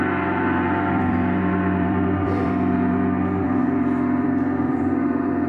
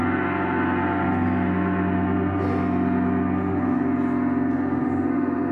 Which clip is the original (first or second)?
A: second